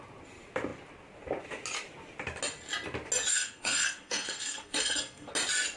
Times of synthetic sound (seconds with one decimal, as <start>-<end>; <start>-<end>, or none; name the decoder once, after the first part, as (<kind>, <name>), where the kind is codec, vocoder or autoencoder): 3.3-5.3 (codec, SNAC)

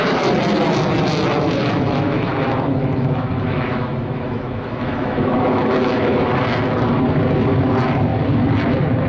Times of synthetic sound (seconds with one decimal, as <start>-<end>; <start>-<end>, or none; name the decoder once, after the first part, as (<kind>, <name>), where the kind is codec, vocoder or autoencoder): 1.6-6.7 (autoencoder, DAC-VAE)

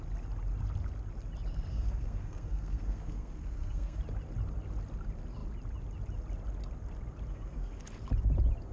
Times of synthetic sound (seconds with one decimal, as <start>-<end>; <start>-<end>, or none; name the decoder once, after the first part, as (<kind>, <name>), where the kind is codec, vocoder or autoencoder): 1.7-4.0 (codec, SNAC); 7.3-7.8

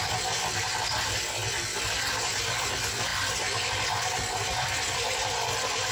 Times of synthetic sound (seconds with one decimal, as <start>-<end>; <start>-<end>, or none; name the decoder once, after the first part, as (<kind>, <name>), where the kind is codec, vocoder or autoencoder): 0.0-1.4 (vocoder, BigVGAN v2); 2.4-5.9

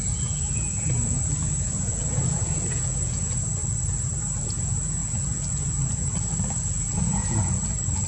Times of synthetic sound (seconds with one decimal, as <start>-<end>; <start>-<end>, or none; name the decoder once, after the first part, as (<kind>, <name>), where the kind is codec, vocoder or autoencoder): 0.0-3.6 (vocoder, Vocos); 4.4-8.1